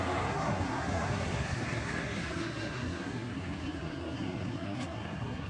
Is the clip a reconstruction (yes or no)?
yes